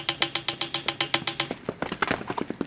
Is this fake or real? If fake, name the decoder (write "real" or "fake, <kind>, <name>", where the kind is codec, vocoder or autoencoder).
real